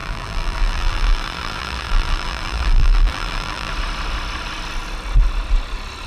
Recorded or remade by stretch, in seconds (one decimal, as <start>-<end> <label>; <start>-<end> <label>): 0.0-3.7 remade; 3.7-6.1 recorded